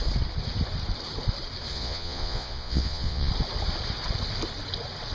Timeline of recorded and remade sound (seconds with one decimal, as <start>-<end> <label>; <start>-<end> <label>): 0.0-1.7 recorded; 1.7-3.3 remade; 3.3-5.1 recorded